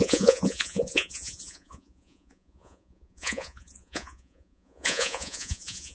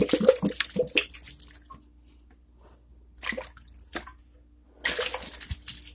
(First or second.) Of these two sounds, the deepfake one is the first